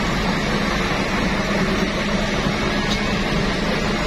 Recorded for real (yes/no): yes